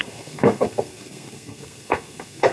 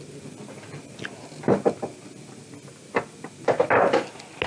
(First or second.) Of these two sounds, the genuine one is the second